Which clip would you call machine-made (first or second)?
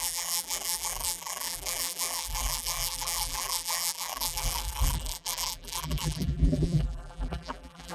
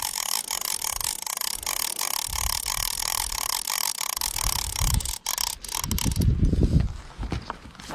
first